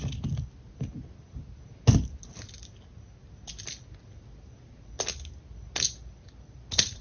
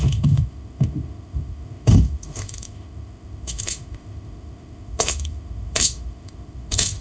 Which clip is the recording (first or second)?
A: first